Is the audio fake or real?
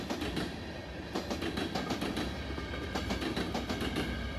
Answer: real